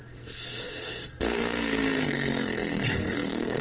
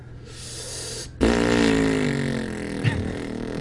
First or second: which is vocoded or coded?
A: first